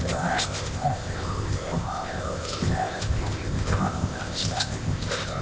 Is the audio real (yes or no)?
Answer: no